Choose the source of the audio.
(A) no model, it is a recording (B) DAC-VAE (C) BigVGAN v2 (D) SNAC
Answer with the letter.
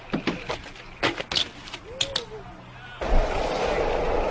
A